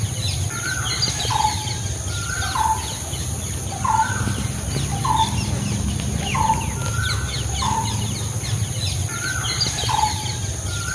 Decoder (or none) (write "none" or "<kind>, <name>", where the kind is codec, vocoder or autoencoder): none